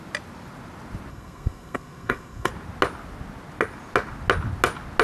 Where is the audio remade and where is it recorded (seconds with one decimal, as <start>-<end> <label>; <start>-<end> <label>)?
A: 0.0-1.1 recorded; 1.1-2.5 remade; 2.5-5.0 recorded